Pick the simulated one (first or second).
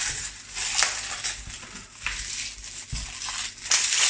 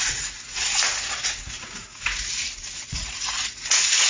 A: second